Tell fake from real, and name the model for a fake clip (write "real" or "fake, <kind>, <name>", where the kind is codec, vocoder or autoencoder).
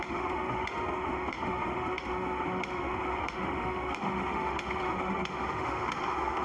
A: fake, autoencoder, DAC-VAE